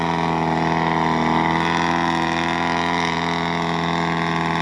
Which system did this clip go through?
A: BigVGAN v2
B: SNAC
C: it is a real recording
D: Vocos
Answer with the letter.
C